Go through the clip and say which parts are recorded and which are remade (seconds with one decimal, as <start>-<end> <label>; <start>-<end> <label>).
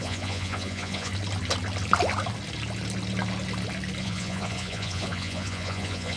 0.0-1.1 remade; 1.1-4.0 recorded; 4.0-6.2 remade